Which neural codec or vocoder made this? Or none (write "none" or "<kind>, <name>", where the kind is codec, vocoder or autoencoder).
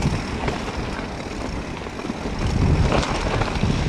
none